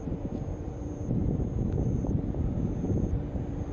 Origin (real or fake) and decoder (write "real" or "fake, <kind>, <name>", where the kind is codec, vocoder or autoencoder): fake, vocoder, BigVGAN v2